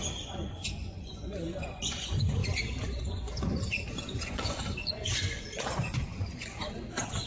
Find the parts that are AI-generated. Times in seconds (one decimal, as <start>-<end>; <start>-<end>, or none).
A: 0.0-2.4; 3.0-7.3